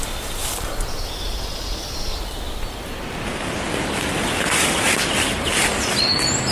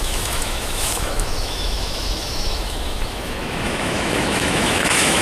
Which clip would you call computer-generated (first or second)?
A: second